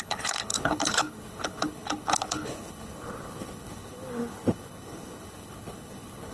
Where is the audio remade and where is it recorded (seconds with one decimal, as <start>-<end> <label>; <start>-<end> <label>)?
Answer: 0.0-6.3 remade